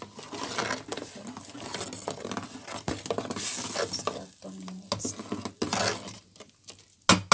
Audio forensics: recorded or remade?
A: recorded